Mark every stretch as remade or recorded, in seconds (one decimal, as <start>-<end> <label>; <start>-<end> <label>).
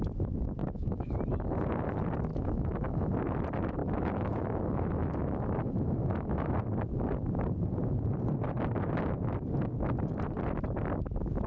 0.0-0.6 recorded; 0.6-1.1 remade; 1.1-2.3 recorded; 2.3-3.1 remade; 3.1-3.8 recorded; 3.8-6.5 remade; 6.5-11.5 recorded